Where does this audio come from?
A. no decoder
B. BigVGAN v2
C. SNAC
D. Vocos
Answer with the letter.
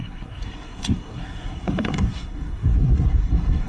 C